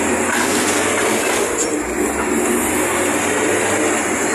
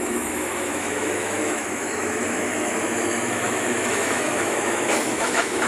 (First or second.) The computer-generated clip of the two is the second